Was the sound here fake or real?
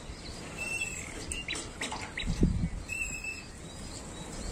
real